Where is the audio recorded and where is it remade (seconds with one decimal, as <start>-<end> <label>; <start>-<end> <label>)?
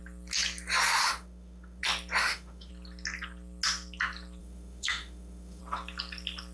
0.0-1.0 recorded; 1.0-1.8 remade; 1.8-2.2 recorded; 2.2-2.7 remade; 2.7-4.4 recorded; 4.4-5.6 remade; 5.6-6.5 recorded